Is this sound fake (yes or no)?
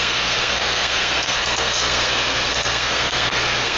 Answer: yes